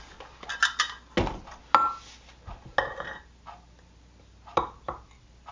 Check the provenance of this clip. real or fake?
real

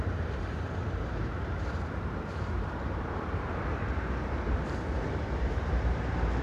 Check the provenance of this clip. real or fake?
fake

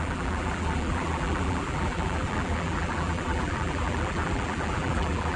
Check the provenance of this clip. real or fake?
fake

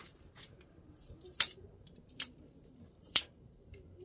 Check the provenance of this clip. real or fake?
fake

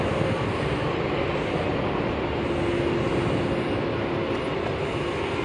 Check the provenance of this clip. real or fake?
real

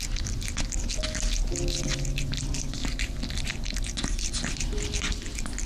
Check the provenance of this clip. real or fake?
real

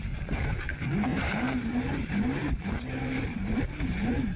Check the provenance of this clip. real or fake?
fake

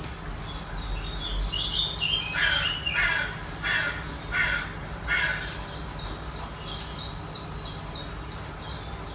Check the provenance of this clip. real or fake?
real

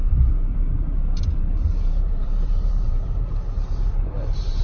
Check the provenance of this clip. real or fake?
fake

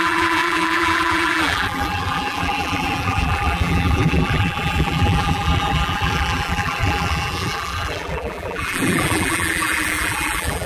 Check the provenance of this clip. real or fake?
fake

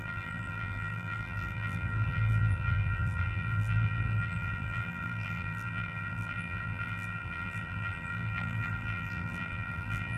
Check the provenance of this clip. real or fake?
fake